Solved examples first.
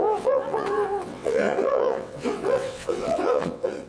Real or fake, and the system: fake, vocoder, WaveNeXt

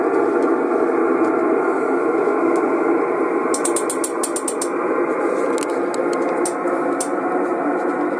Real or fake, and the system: real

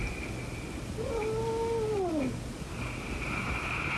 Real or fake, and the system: real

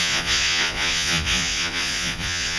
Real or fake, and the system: fake, vocoder, Vocos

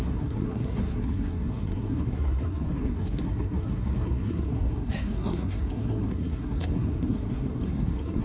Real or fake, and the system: fake, codec, SNAC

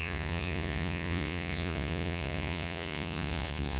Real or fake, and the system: fake, vocoder, Vocos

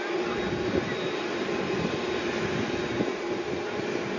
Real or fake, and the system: real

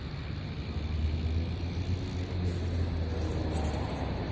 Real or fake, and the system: real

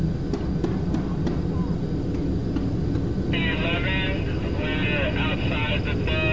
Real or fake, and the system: real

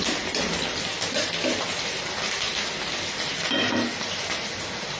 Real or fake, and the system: real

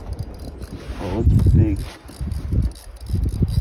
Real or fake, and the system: real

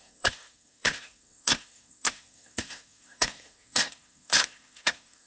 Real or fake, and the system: fake, codec, SNAC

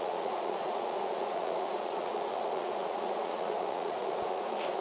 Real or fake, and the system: fake, vocoder, Vocos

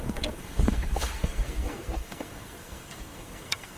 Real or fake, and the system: fake, codec, SNAC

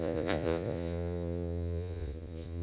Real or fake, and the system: fake, vocoder, Vocos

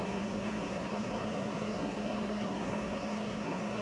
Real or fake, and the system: fake, codec, SNAC